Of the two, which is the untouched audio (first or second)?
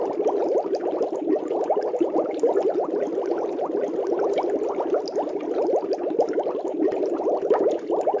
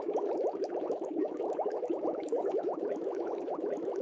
first